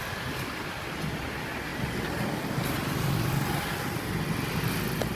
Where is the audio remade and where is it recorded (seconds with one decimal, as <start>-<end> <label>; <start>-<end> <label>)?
0.0-5.2 recorded